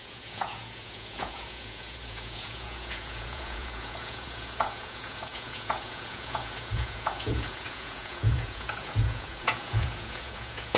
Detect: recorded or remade remade